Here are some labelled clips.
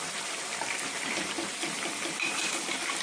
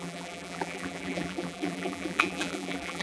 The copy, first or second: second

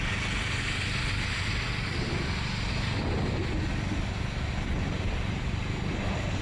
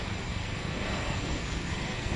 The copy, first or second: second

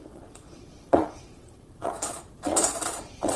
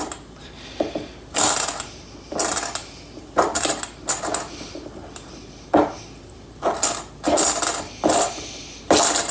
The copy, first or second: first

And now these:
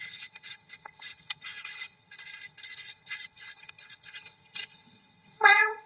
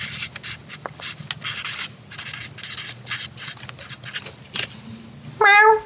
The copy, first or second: first